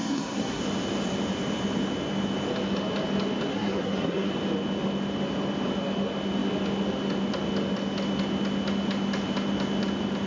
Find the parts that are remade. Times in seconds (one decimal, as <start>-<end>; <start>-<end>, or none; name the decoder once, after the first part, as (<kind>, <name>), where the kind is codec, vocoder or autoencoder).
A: 0.0-0.6 (codec, SNAC); 3.5-4.3